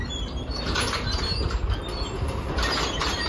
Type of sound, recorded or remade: recorded